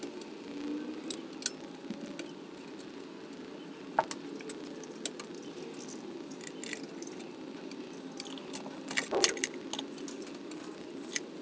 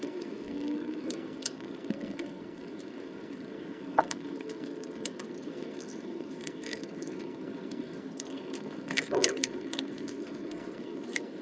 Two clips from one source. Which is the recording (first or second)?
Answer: first